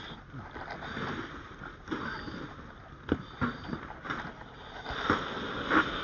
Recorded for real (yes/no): yes